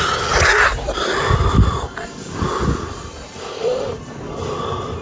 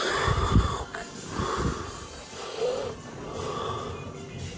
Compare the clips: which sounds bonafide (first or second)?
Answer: second